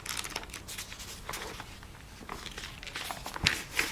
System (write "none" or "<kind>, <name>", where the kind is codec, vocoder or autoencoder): none